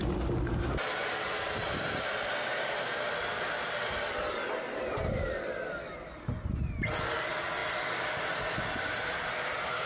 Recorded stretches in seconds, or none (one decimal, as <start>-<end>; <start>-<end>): 0.0-9.9

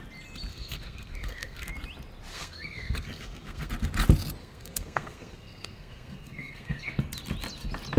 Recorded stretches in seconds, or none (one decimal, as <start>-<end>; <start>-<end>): 0.0-0.5; 1.7-2.3; 3.7-4.4; 7.0-8.0

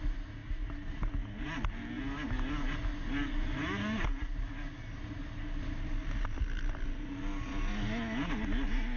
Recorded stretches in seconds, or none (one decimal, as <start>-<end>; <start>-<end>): 0.0-9.0

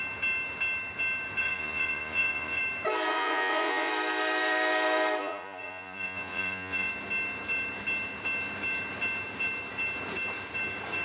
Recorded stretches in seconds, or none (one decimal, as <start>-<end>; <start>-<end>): 0.0-1.4; 2.6-3.1; 3.9-5.2; 6.9-11.0

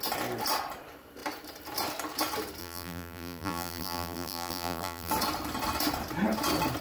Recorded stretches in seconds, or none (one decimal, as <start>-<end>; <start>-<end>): 0.0-2.6; 5.1-6.8

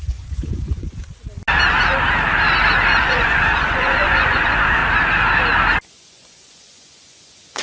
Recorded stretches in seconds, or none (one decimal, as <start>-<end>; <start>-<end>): 1.1-3.0; 4.8-5.9

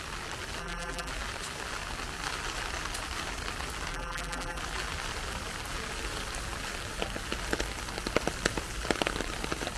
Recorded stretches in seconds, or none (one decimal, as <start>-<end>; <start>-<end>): 0.0-0.6; 1.1-3.9; 4.6-9.8

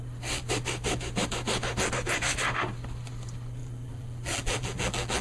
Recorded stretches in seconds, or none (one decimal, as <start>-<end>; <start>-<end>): 0.0-3.6